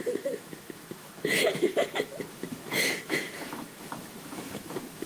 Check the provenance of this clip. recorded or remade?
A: remade